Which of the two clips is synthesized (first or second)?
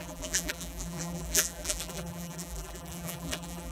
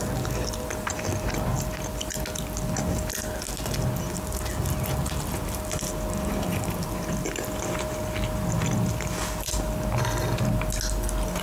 first